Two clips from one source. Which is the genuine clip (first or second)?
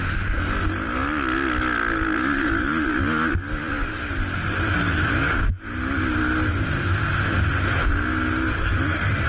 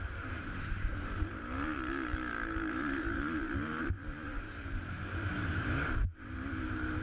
first